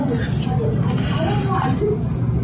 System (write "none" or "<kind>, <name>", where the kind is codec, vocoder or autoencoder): none